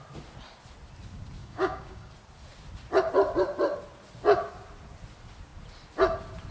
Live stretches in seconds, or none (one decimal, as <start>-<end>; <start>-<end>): 0.0-1.4; 2.1-6.5